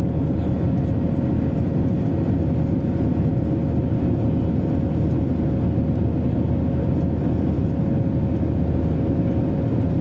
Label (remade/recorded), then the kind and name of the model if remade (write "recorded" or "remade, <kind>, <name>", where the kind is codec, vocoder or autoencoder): recorded